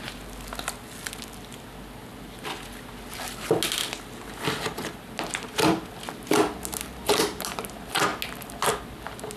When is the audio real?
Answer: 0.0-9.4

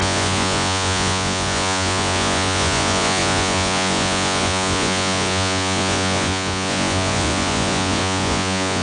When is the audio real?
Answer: none

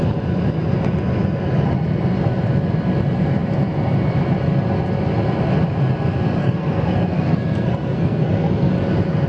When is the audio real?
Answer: 0.0-6.4; 8.7-9.3